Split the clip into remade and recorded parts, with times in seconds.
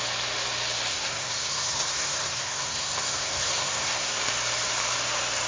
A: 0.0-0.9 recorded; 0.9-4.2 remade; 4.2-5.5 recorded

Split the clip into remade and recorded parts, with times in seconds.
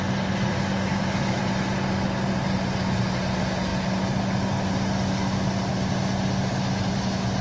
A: 0.0-0.9 recorded; 0.9-1.4 remade; 1.4-7.4 recorded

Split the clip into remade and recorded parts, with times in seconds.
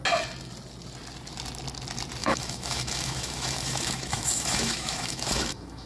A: 0.0-2.2 recorded; 2.2-5.9 remade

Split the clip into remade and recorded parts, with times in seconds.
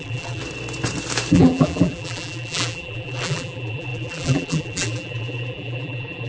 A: 0.0-0.4 remade; 0.4-1.3 recorded; 1.3-6.3 remade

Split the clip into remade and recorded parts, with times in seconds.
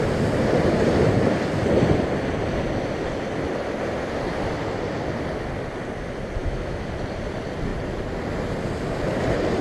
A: 0.0-6.4 recorded; 6.4-6.9 remade; 6.9-9.6 recorded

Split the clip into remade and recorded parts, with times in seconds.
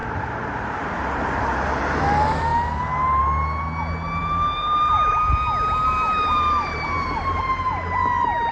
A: 0.0-2.0 remade; 2.0-4.2 recorded; 4.2-8.5 remade